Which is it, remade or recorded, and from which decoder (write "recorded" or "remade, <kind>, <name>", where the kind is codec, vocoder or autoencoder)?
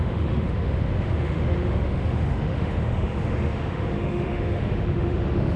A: remade, autoencoder, DAC-VAE